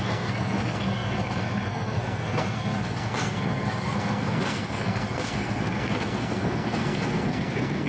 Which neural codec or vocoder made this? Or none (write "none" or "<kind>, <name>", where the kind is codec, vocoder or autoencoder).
codec, SNAC